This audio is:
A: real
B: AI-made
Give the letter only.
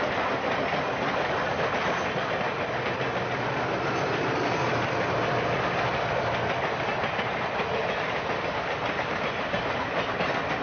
A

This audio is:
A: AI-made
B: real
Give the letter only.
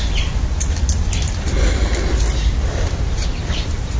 B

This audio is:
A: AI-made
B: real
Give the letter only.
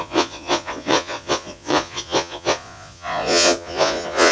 A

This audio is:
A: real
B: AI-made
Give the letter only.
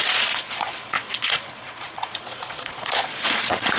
B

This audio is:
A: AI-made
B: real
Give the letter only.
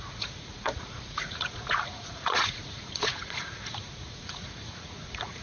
A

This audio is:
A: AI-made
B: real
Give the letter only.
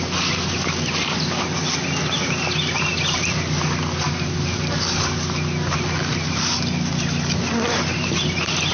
B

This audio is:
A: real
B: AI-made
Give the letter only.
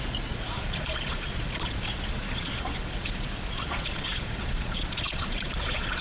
B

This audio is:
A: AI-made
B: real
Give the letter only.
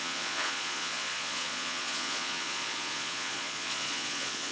A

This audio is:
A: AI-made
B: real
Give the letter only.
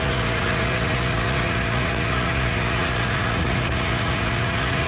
A